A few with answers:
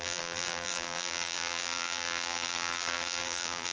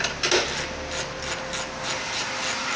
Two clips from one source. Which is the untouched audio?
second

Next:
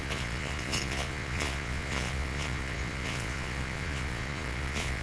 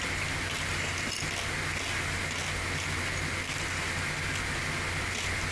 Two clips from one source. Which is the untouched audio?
second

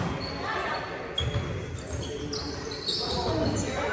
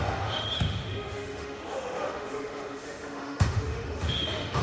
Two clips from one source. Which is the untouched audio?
first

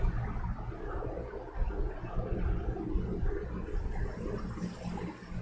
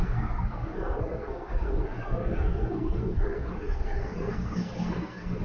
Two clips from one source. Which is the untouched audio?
first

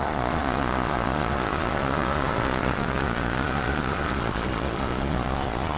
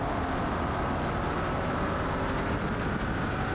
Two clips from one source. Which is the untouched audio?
second